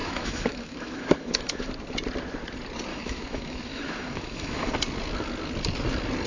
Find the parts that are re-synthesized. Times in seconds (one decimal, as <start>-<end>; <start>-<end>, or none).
0.0-1.7; 2.9-4.7